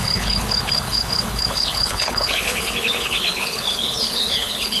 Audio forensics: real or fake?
fake